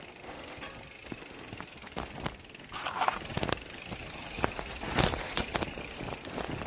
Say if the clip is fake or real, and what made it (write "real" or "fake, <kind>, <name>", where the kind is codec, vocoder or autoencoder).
real